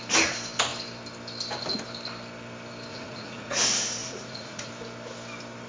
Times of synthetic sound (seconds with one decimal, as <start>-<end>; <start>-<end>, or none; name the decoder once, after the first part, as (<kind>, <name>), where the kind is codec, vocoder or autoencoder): 2.9-3.6 (vocoder, Vocos); 4.0-4.7